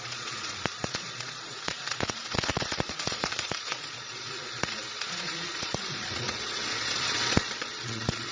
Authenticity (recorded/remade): remade